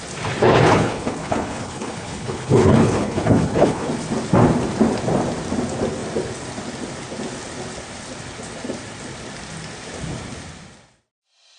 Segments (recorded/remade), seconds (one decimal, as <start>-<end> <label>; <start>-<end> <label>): 0.0-0.4 recorded; 0.4-3.9 remade; 3.9-11.6 recorded